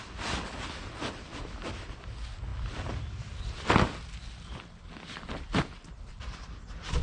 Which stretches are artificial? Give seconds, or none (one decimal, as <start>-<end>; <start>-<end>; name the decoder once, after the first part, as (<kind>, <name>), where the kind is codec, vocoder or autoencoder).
none